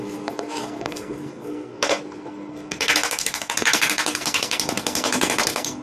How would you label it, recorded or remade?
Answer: remade